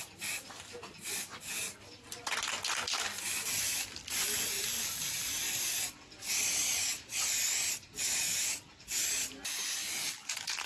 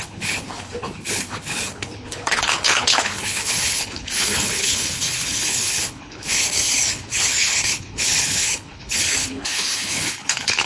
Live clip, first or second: first